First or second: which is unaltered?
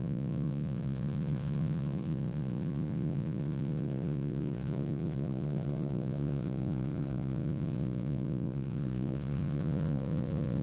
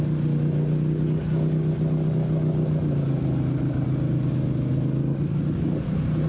second